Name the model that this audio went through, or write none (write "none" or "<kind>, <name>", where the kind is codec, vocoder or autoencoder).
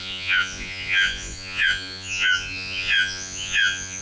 vocoder, Vocos